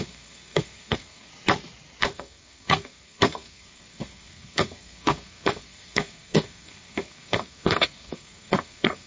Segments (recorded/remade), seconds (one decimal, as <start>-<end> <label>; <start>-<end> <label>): 0.0-1.3 remade; 1.3-2.0 recorded; 2.0-9.1 remade